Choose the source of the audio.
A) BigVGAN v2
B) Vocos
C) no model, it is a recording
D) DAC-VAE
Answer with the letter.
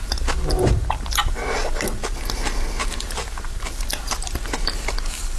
C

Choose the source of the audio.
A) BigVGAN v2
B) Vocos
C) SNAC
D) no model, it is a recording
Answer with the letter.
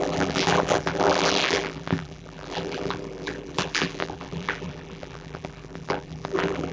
A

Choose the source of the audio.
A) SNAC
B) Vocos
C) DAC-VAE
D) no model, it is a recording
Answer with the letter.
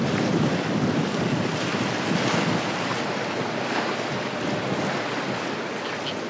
D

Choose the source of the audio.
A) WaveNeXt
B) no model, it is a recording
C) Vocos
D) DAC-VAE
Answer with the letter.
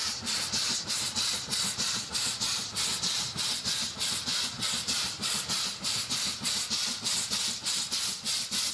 B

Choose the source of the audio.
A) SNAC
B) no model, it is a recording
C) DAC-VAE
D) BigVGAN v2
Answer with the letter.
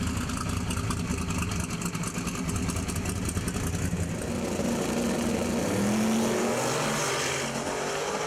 B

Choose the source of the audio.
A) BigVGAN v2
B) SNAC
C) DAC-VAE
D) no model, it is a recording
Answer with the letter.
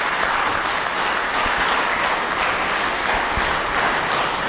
D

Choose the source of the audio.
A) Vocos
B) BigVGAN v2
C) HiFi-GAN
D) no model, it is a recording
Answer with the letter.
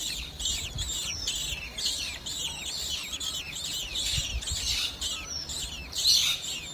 D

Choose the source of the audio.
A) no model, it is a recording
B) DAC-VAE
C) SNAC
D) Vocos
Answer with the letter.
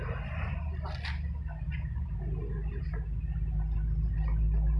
A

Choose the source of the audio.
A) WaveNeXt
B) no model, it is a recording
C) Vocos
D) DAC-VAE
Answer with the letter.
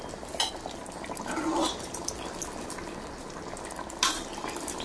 B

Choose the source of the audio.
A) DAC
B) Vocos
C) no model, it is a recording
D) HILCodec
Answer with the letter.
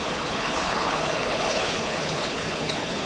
D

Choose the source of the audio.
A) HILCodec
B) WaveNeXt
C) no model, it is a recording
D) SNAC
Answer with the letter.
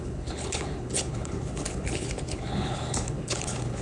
A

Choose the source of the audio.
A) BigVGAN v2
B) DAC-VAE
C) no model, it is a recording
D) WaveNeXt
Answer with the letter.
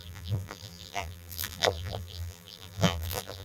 A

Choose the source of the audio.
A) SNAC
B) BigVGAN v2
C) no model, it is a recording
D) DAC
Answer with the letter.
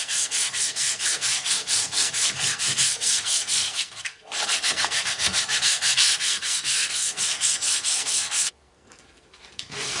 A